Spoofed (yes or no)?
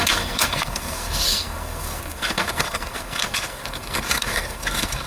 yes